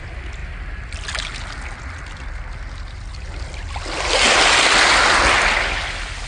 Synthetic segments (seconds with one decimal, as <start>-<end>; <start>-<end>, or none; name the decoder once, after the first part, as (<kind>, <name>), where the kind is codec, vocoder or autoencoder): none